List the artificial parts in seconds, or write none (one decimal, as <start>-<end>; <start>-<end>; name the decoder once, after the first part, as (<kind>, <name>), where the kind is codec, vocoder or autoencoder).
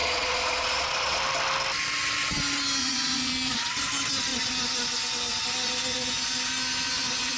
0.0-1.2 (vocoder, Vocos); 2.8-3.9